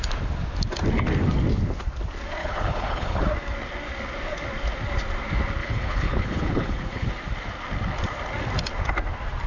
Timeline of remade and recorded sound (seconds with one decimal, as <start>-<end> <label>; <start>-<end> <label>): 0.0-2.4 recorded; 2.4-3.2 remade; 3.2-5.6 recorded; 5.6-7.1 remade; 7.1-9.5 recorded